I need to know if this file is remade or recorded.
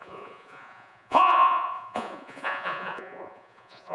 remade